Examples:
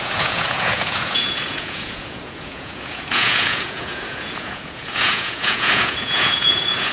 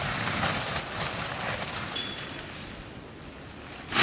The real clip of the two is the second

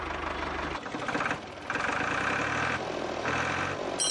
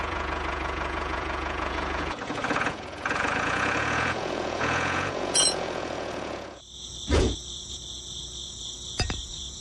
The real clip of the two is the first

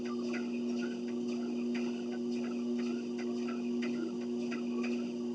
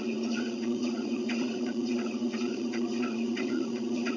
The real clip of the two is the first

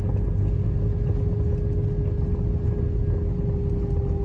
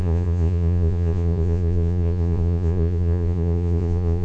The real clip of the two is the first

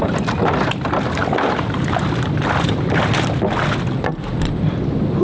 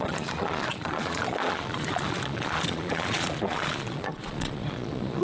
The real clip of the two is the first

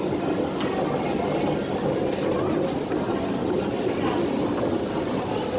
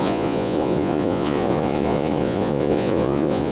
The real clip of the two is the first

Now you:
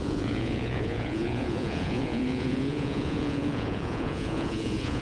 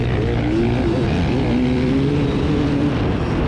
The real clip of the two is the second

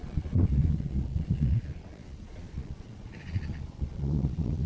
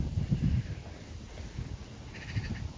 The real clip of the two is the second